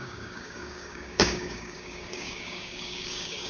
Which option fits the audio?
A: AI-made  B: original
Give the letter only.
A